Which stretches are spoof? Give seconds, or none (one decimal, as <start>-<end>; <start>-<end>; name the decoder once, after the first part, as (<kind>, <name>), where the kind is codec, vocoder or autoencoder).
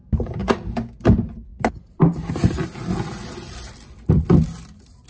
none